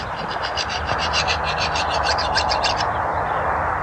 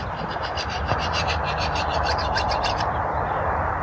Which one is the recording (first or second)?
first